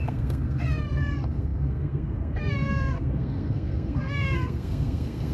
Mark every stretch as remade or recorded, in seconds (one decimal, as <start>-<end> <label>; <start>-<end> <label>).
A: 0.0-5.3 remade